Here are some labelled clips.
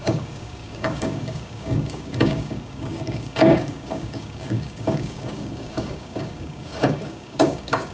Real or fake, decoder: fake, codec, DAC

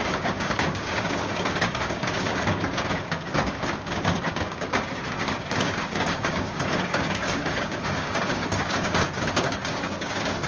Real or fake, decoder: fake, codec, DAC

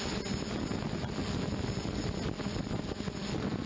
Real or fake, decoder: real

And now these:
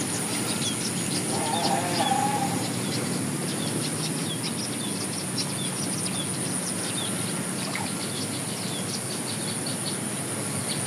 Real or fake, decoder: real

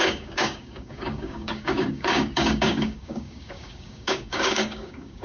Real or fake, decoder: fake, codec, DAC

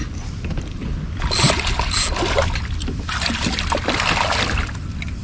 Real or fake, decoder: real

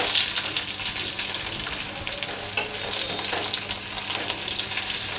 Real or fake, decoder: real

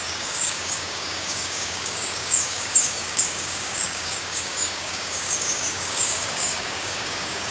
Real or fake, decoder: fake, codec, DAC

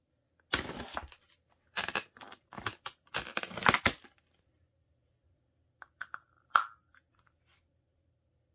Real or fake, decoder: real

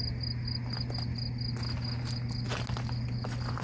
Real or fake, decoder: real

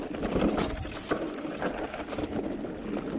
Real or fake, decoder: real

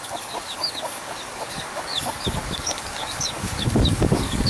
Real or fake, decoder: fake, codec, DAC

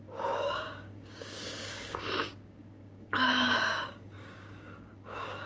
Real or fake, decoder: fake, codec, DAC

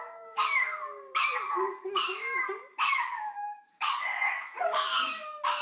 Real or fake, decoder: fake, codec, DAC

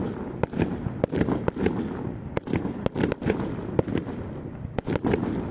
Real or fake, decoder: real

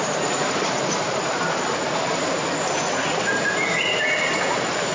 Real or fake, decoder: real